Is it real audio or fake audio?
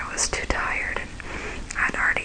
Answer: real